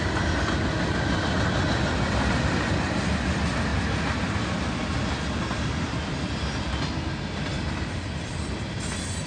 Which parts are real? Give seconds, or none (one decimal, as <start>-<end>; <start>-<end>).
0.0-9.3